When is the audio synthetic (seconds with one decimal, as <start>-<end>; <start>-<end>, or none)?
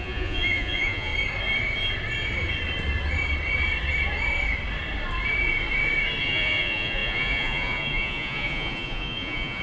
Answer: 0.0-1.1; 6.2-9.6